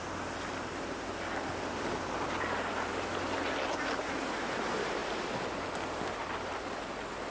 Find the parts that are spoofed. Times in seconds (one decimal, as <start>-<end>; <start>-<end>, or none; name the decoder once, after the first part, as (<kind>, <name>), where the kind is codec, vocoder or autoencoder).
none